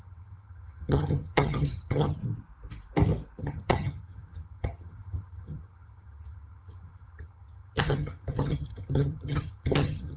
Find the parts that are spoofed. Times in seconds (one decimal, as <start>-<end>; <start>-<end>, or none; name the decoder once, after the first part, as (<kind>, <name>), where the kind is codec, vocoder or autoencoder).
0.0-2.2 (vocoder, HiFi-GAN); 3.4-10.2